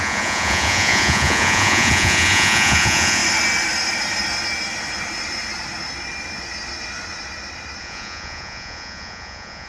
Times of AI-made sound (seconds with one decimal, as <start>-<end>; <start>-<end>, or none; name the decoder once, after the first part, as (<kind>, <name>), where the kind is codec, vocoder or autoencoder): 0.0-3.2 (vocoder, Vocos); 7.8-9.7